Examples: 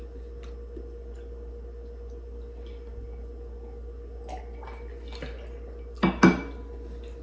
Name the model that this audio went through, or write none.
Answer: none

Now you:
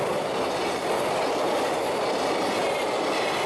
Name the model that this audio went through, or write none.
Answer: none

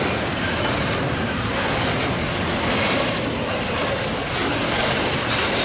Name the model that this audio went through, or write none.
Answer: none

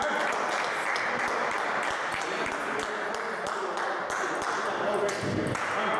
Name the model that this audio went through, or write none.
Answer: none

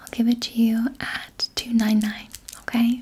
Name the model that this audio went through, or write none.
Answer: none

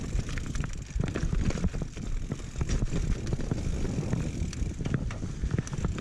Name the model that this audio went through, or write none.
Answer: none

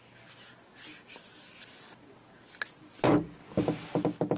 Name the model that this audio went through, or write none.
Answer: none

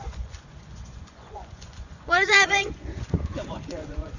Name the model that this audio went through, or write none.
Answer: vocoder, Vocos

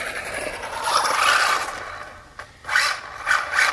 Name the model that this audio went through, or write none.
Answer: none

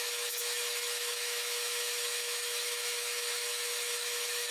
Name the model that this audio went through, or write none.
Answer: autoencoder, DAC-VAE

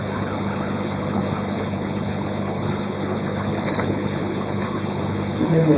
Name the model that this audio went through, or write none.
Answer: codec, HILCodec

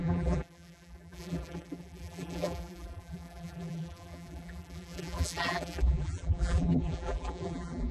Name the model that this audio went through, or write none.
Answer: vocoder, BigVGAN v2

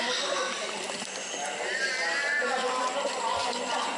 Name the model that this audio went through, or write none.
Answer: none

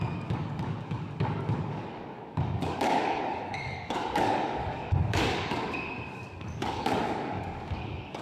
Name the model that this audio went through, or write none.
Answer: codec, DAC